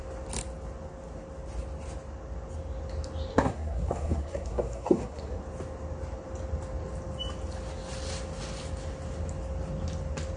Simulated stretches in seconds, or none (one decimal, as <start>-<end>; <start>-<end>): 3.3-5.4